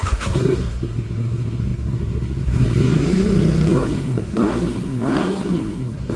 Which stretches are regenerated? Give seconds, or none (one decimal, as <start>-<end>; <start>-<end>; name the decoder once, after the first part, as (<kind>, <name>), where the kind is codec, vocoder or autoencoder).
0.0-6.2 (codec, SNAC)